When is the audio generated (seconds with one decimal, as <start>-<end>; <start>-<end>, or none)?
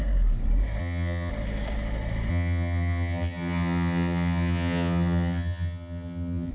0.8-1.3; 2.3-6.5